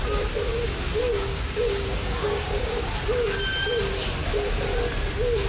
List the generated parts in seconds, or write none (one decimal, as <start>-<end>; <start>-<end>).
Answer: 1.0-2.9